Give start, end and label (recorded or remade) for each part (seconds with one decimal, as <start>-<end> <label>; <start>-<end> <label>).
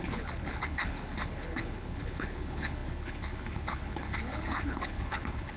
0.0-5.6 remade